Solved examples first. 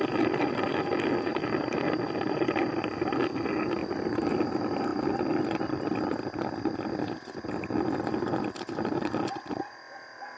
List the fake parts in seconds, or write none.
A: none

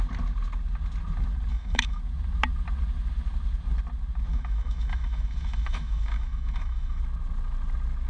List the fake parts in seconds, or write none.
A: 1.5-2.0 (autoencoder, DAC-VAE); 4.3-7.0

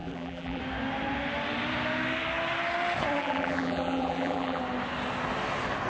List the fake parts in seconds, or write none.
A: 0.0-0.6 (vocoder, BigVGAN v2); 3.2-4.6